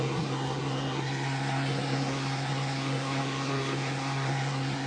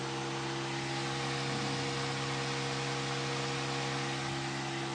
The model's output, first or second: first